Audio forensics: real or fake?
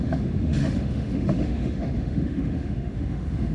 fake